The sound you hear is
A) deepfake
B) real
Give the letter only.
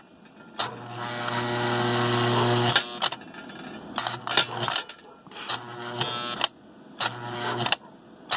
B